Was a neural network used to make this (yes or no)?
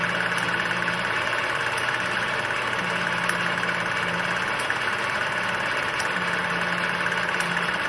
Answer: no